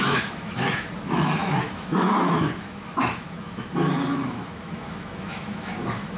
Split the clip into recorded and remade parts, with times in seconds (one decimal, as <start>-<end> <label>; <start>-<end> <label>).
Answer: 0.0-6.2 remade

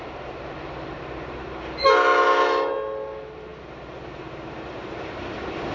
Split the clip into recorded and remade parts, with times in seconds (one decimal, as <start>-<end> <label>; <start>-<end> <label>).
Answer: 0.0-5.7 recorded

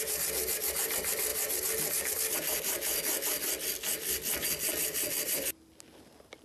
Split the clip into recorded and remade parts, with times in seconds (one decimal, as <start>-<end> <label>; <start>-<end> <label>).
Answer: 0.0-6.4 recorded